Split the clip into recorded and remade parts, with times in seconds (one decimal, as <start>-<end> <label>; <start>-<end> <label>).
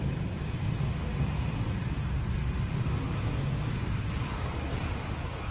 0.0-5.5 recorded